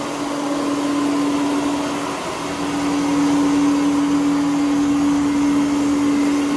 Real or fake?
real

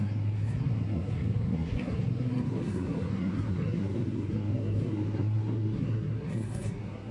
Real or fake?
fake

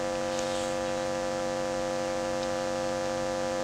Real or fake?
real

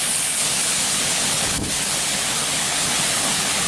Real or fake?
fake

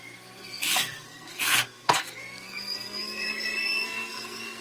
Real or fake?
fake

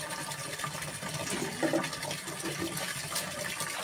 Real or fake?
real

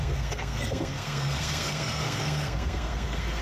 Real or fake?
fake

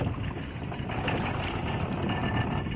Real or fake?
real